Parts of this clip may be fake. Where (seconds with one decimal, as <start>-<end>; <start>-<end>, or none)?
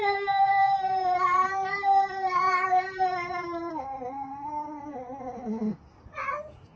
0.6-3.7